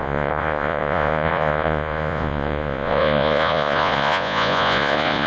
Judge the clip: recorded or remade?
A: remade